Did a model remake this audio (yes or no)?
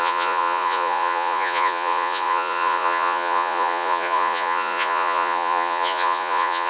yes